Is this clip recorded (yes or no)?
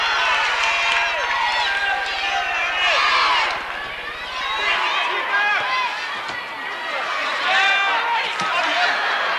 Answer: yes